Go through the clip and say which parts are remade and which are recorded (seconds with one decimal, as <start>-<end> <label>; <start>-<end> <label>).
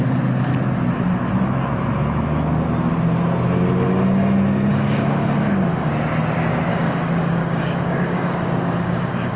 0.0-4.7 recorded; 4.7-5.9 remade; 5.9-6.7 recorded; 6.7-9.4 remade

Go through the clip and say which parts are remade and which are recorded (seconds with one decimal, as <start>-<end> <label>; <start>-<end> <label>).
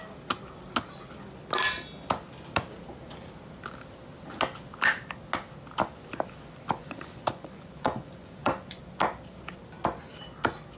0.0-6.8 recorded; 6.8-8.8 remade; 8.8-10.8 recorded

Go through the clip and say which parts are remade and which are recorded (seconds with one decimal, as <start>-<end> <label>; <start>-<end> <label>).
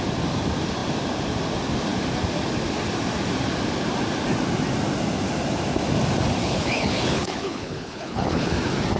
0.0-6.4 recorded; 6.4-8.5 remade; 8.5-9.0 recorded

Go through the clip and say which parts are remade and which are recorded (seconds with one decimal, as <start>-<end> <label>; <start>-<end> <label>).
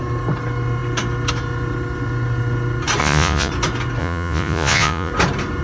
0.0-3.0 recorded; 3.0-3.5 remade; 3.5-4.0 recorded; 4.0-5.1 remade; 5.1-5.6 recorded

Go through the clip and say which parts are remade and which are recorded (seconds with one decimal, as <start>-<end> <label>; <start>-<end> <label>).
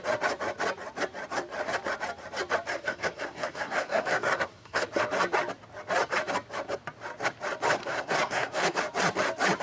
0.0-2.7 recorded; 2.7-4.9 remade; 4.9-7.8 recorded; 7.8-8.8 remade; 8.8-9.6 recorded